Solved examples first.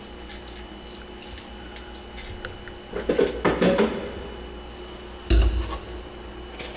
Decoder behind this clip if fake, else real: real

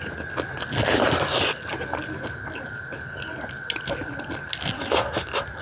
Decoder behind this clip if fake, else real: real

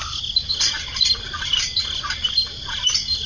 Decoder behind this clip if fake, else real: real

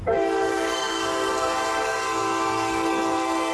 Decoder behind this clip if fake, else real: fake, codec, SNAC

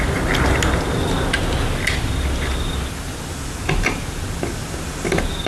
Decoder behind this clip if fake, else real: real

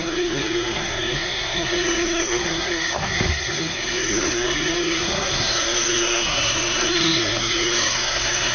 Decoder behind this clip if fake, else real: fake, codec, SNAC